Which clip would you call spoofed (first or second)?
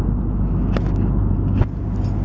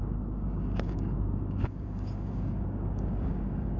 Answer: second